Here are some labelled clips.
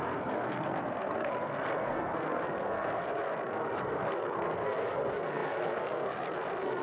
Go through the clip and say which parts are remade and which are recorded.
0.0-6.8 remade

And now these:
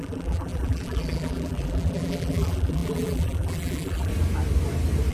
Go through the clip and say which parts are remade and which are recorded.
0.0-4.1 remade; 4.1-5.1 recorded

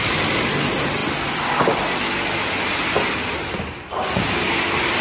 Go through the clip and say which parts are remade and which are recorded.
0.0-5.0 recorded

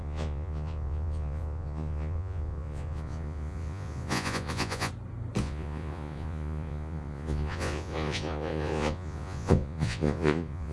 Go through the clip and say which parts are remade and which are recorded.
0.0-4.9 remade; 4.9-5.4 recorded; 5.4-10.7 remade

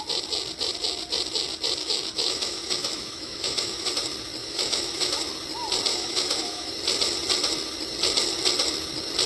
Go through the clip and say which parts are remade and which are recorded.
0.0-1.8 recorded; 1.8-3.9 remade; 3.9-4.4 recorded; 4.4-5.1 remade; 5.1-5.9 recorded; 5.9-6.7 remade; 6.7-9.3 recorded

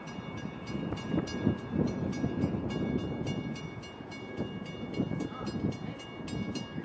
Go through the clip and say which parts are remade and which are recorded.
0.0-6.8 recorded

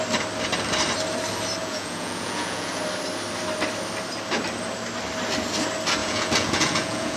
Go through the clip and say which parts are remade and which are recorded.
0.0-1.6 recorded; 1.6-2.8 remade; 2.8-6.0 recorded; 6.0-7.2 remade